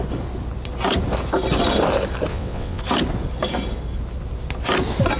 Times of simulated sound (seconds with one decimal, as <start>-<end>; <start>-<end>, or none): 2.3-2.8